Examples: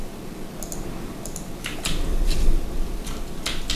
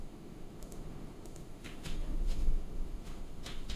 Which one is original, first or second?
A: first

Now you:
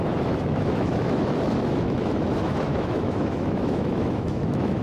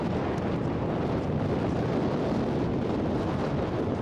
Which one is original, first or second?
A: second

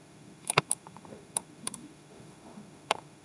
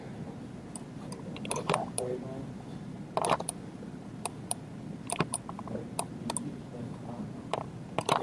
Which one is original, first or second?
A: second